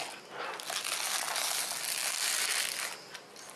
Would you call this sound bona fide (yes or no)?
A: yes